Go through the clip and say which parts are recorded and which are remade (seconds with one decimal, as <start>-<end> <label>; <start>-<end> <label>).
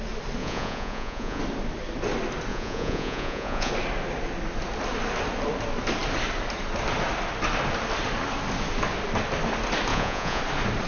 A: 0.0-0.4 recorded; 0.4-1.4 remade; 1.4-2.5 recorded; 2.5-3.7 remade; 3.7-9.9 recorded; 9.9-10.4 remade; 10.4-10.9 recorded